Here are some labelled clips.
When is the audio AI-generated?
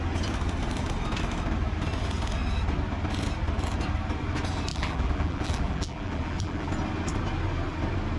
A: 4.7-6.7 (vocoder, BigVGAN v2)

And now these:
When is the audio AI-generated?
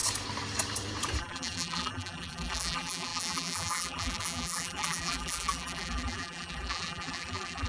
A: 1.2-7.7 (vocoder, BigVGAN v2)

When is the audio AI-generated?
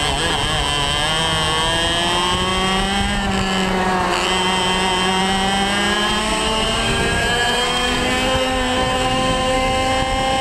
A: 6.2-9.9 (codec, SNAC)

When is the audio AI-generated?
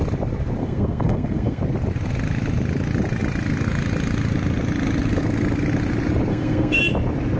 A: 0.6-1.6 (codec, SNAC); 6.3-6.8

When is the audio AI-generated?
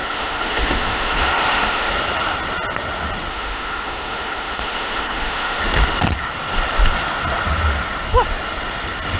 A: 0.0-1.9 (autoencoder, DAC-VAE); 3.3-5.6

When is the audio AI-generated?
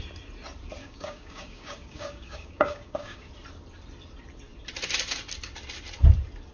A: 0.8-3.3 (codec, DAC)